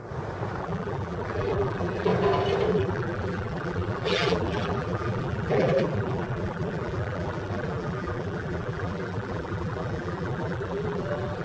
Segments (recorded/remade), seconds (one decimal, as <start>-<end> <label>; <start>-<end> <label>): 0.0-0.6 recorded; 0.6-2.1 remade; 2.1-2.7 recorded; 2.7-11.4 remade